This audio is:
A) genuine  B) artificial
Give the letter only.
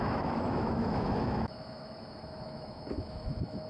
B